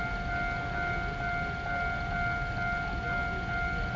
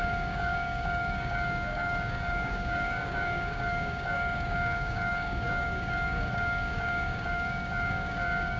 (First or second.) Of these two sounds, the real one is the first